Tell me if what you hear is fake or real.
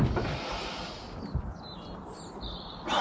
fake